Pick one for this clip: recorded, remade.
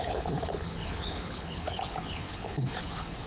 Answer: remade